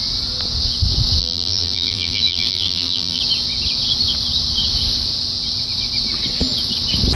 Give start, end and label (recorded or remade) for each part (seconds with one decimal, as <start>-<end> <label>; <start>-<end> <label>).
0.0-1.2 recorded; 1.2-3.2 remade; 3.2-7.2 recorded